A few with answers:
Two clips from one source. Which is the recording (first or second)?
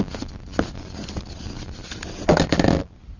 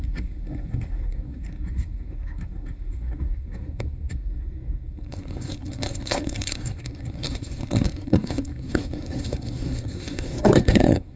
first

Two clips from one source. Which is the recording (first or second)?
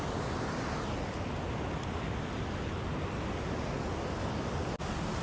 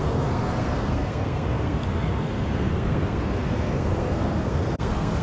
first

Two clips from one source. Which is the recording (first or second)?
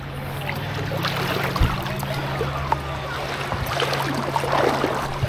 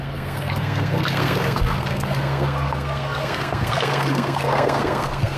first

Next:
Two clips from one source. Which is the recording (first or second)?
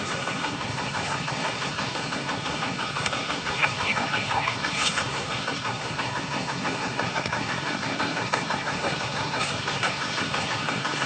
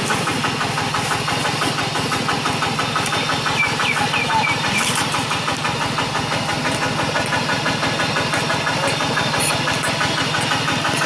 second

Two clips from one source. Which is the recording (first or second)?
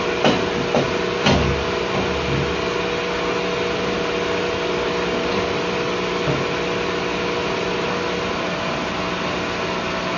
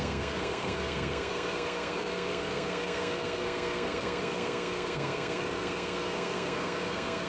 first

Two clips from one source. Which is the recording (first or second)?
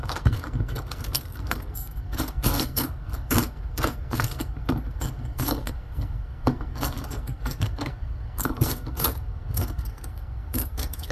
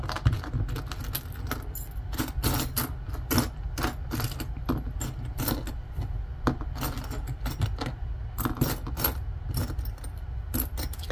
second